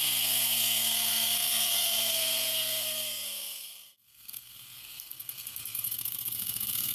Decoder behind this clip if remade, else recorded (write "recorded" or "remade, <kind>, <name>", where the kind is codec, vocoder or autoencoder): remade, codec, SNAC